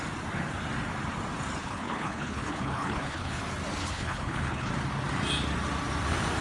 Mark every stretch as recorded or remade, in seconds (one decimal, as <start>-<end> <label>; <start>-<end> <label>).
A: 0.0-1.6 recorded; 1.6-3.4 remade; 3.4-3.8 recorded; 3.8-4.7 remade; 4.7-6.4 recorded